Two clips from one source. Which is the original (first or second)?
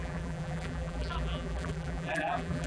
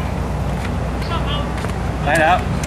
second